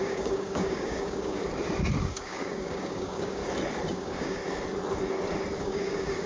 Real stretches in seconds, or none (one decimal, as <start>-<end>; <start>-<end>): 1.4-2.0; 3.4-3.9; 4.4-5.6